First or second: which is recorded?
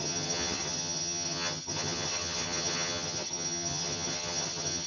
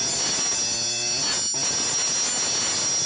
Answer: second